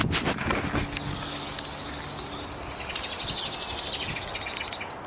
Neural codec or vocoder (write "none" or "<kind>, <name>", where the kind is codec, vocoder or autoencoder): none